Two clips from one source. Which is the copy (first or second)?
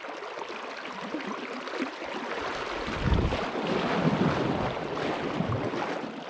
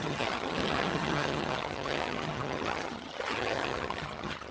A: second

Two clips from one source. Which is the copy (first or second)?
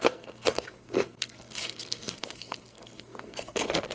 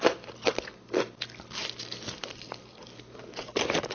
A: first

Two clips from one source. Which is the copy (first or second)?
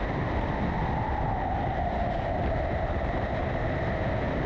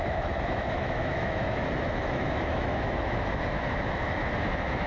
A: second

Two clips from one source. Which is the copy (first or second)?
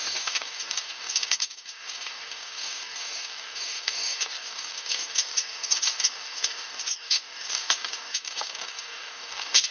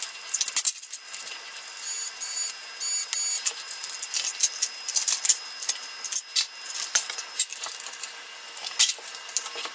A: first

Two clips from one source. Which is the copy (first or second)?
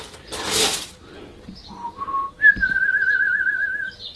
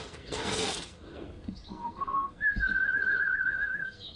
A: second